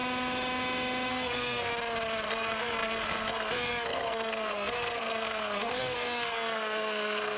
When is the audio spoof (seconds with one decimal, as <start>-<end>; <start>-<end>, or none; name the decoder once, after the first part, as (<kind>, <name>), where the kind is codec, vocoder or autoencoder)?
1.1-1.7 (codec, SNAC); 2.3-7.4